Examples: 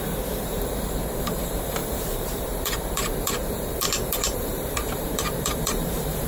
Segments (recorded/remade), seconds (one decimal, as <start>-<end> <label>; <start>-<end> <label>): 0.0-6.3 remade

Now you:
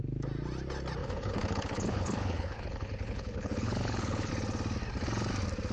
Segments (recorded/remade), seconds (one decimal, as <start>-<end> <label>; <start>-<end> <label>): 0.0-1.0 recorded; 1.0-4.3 remade; 4.3-5.7 recorded

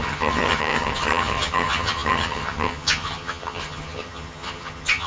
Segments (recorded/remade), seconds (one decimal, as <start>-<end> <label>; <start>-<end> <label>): 0.0-5.1 remade

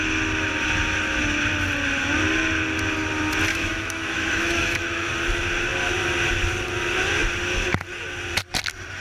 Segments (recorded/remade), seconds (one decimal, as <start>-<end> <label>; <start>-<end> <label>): 0.0-3.5 recorded; 3.5-5.1 remade; 5.1-9.0 recorded

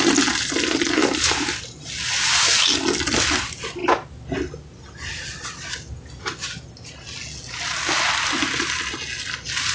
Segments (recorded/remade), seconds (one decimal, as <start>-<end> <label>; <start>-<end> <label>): 0.0-1.0 recorded; 1.0-1.9 remade; 1.9-9.7 recorded